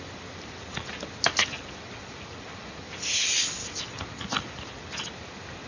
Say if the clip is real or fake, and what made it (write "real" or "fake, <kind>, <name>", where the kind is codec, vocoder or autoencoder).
real